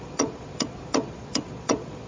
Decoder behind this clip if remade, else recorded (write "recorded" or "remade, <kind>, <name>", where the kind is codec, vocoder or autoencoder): remade, vocoder, Vocos